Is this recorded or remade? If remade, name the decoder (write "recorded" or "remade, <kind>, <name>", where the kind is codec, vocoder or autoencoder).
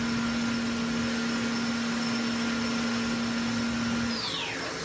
recorded